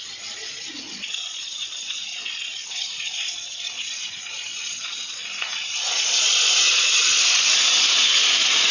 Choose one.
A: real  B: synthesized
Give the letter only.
B